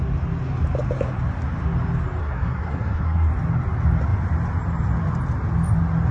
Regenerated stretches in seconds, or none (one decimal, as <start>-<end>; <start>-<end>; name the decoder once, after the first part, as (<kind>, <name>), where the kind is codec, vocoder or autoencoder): 2.2-3.3 (codec, SNAC)